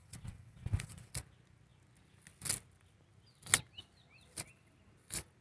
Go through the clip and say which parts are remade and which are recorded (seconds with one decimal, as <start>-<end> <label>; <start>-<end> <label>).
0.0-1.1 remade; 1.1-5.4 recorded